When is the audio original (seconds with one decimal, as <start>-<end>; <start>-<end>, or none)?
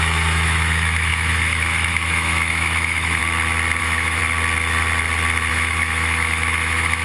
3.2-3.8; 4.2-5.5